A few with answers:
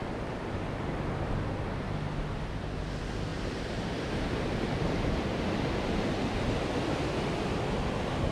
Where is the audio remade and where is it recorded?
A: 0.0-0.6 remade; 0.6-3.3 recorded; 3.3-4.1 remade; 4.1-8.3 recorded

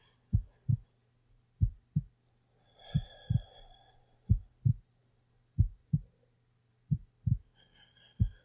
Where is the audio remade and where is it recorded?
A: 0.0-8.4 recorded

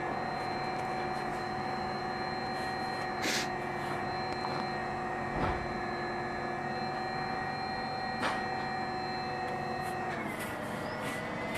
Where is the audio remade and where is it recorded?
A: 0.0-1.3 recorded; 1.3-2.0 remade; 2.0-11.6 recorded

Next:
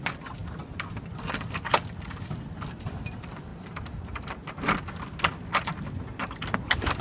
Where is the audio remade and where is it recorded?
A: 0.0-7.0 recorded